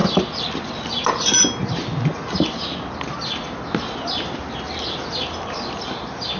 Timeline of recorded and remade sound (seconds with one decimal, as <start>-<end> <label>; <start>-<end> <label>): 0.0-6.4 recorded